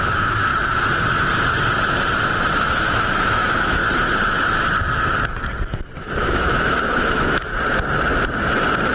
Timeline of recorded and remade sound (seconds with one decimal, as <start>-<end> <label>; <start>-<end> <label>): 0.0-0.5 remade; 0.5-2.6 recorded; 2.6-3.8 remade; 3.8-6.1 recorded; 6.1-7.5 remade; 7.5-8.9 recorded